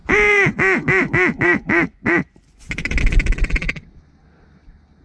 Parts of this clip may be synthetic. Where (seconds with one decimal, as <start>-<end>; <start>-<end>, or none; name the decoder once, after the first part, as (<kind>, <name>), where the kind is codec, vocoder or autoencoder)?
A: 0.0-3.0 (vocoder, Vocos)